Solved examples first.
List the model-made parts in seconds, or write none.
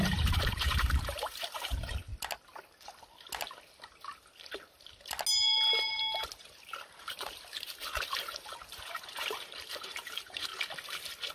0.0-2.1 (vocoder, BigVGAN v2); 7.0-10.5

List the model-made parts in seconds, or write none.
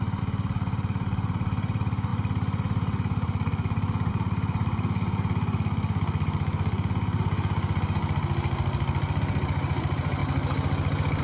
0.0-8.0 (vocoder, BigVGAN v2); 9.2-10.2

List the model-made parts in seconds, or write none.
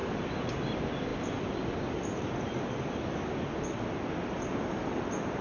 0.0-0.6 (vocoder, BigVGAN v2); 1.1-3.5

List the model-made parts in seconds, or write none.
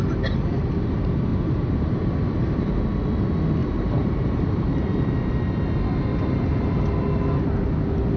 1.3-2.7 (vocoder, BigVGAN v2); 3.6-5.3; 6.1-6.8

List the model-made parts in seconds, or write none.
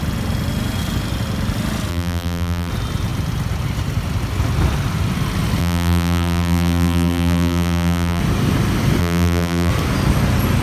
1.9-2.7 (vocoder, BigVGAN v2); 5.6-8.2; 9.0-9.7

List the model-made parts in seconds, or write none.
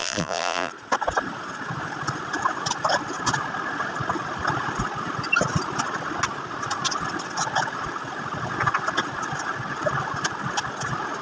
0.0-0.7 (vocoder, BigVGAN v2)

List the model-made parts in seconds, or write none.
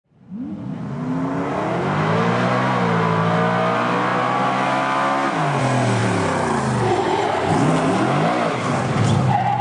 6.0-6.6 (vocoder, BigVGAN v2)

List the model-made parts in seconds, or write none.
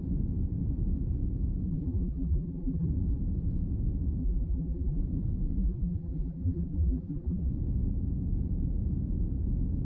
1.7-2.9 (vocoder, BigVGAN v2); 4.2-5.0; 5.6-7.5